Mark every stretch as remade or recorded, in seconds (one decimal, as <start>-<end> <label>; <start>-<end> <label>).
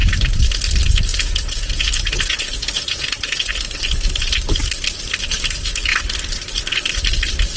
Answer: 0.0-1.1 recorded; 1.1-3.5 remade; 3.5-7.6 recorded